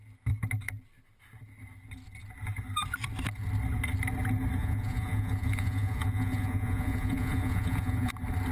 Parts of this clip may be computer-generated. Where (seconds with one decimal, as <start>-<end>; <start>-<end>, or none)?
4.6-8.1